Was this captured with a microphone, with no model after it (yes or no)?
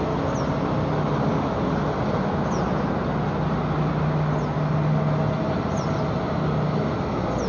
yes